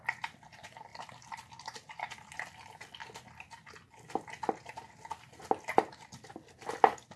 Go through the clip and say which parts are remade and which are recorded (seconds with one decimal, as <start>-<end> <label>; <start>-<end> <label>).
0.0-7.2 recorded